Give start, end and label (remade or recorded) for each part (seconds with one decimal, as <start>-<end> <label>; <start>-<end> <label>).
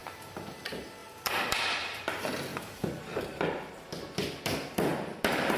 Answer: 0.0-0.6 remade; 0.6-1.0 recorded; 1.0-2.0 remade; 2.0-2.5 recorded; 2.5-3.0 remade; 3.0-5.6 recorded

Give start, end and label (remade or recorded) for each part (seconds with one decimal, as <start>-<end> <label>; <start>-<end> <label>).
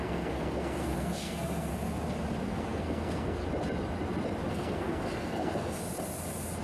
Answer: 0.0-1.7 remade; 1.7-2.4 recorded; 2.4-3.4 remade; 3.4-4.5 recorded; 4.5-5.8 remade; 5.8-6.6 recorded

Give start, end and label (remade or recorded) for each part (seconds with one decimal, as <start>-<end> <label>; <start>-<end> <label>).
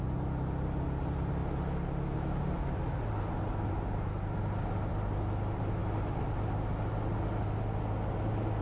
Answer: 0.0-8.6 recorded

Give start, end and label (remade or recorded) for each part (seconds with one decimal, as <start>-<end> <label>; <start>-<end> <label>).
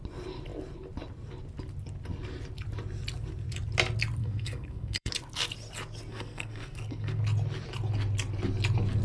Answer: 0.0-4.2 recorded; 4.2-5.1 remade; 5.1-6.1 recorded; 6.1-7.2 remade; 7.2-9.0 recorded